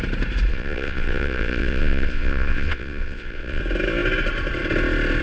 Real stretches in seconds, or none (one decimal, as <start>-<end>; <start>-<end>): 0.0-0.5; 3.6-5.2